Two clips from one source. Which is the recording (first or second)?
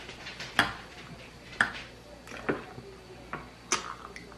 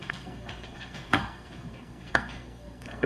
first